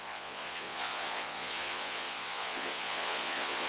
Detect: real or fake fake